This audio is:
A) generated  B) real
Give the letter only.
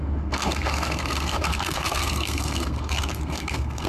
A